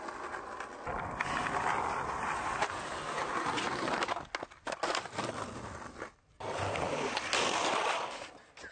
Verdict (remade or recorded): recorded